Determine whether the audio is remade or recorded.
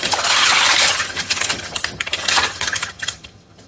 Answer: remade